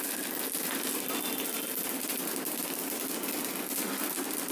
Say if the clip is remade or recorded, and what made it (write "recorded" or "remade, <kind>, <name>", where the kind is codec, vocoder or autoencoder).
recorded